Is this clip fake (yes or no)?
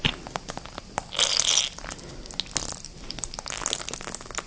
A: no